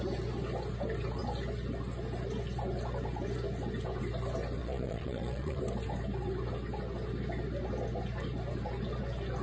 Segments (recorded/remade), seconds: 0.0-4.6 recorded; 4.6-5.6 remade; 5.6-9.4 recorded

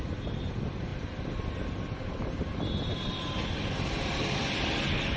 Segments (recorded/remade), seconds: 0.0-5.2 recorded

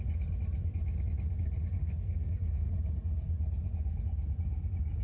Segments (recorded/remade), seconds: 0.0-1.8 recorded; 1.8-2.7 remade; 2.7-5.0 recorded